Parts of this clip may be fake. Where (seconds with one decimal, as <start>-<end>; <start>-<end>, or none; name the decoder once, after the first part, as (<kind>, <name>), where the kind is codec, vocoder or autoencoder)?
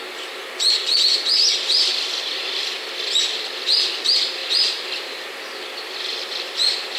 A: none